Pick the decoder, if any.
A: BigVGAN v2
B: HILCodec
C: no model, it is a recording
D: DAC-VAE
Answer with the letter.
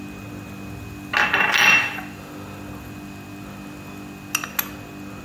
C